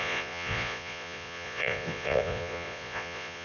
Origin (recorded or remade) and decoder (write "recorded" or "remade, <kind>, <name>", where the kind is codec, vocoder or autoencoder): remade, vocoder, Vocos